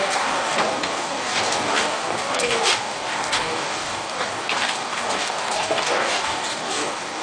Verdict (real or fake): fake